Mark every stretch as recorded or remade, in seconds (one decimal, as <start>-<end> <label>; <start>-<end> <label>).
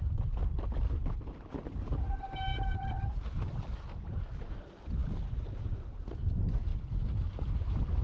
0.0-8.0 recorded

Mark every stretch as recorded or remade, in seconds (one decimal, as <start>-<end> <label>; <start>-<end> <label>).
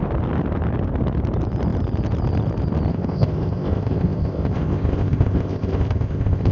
0.0-2.9 recorded; 2.9-6.5 remade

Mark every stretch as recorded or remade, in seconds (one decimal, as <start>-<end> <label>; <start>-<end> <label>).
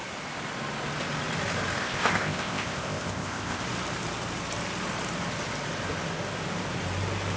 0.0-1.8 recorded; 1.8-3.6 remade; 3.6-7.4 recorded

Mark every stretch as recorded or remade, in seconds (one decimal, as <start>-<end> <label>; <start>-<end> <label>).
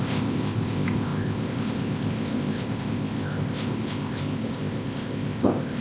0.0-5.8 remade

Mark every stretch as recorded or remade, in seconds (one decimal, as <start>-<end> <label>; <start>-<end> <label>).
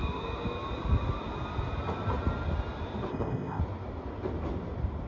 0.0-3.1 recorded; 3.1-3.6 remade; 3.6-5.1 recorded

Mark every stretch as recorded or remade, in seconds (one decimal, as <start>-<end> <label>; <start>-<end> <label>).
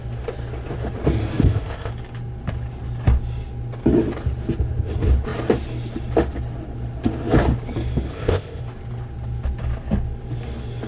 0.0-1.4 recorded; 1.4-1.9 remade; 1.9-8.1 recorded; 8.1-8.6 remade; 8.6-10.9 recorded